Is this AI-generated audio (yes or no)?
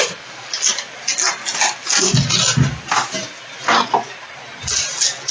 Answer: no